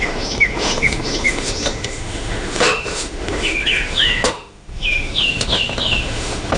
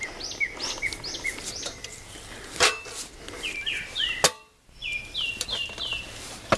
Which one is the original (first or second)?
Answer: second